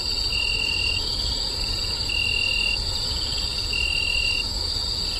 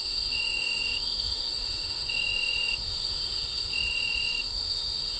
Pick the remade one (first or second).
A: second